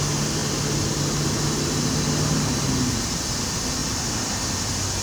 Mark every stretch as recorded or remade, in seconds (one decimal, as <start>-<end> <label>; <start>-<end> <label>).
0.0-5.0 recorded